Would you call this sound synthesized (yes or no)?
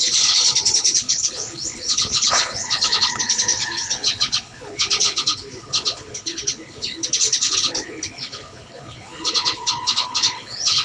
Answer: yes